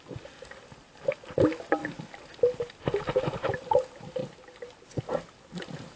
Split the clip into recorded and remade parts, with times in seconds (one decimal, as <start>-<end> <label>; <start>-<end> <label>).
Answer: 0.0-6.0 recorded